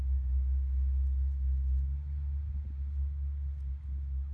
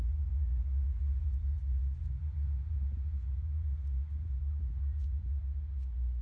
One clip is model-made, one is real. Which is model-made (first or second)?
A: second